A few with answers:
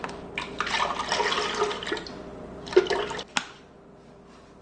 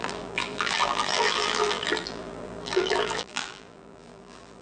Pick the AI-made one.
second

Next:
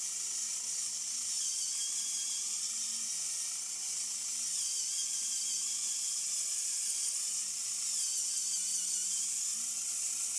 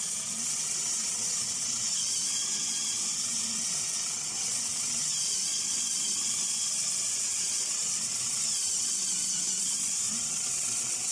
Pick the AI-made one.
second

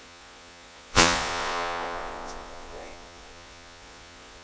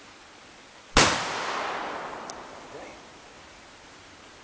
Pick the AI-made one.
first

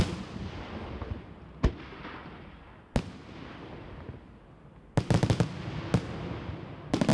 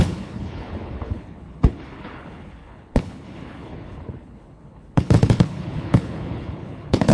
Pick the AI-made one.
second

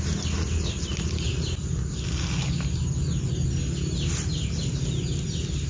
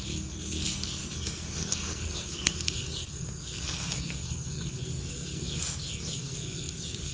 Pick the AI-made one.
second